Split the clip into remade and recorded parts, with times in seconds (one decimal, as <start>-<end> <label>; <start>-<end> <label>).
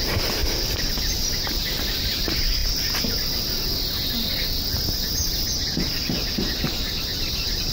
0.0-7.7 recorded